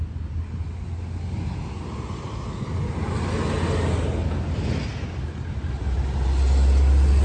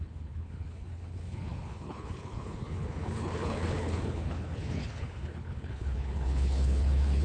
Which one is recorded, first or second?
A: first